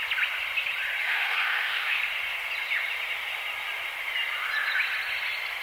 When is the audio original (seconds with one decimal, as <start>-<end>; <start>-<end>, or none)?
0.0-1.0; 2.0-5.6